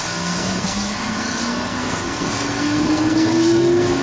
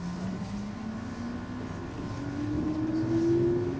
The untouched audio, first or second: second